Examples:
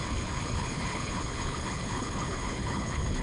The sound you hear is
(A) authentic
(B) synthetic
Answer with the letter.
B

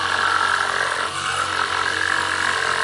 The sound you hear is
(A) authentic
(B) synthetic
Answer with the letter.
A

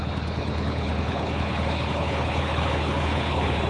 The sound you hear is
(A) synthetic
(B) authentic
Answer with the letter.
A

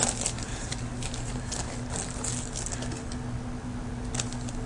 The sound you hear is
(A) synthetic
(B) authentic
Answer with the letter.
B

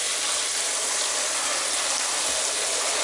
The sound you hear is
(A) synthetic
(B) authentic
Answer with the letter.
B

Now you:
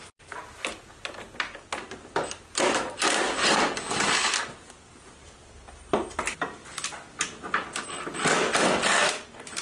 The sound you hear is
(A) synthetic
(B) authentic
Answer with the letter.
B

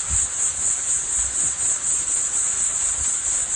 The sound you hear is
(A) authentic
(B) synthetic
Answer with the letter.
A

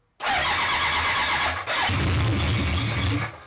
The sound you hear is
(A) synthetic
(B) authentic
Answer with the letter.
B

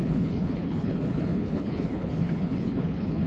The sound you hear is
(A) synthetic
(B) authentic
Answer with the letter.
A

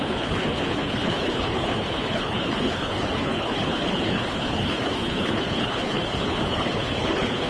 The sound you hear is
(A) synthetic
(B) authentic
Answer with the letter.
A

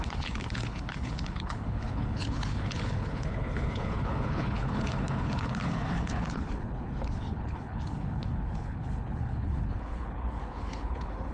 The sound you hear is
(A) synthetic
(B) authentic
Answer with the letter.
A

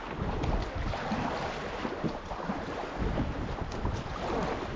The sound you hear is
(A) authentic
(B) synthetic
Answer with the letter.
A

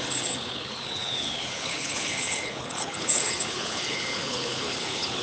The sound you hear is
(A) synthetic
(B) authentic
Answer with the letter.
A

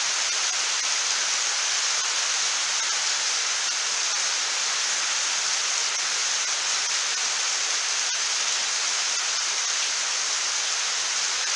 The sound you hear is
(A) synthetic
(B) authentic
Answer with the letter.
B